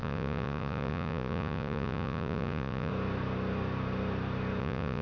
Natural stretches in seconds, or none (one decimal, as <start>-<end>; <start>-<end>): 2.9-4.6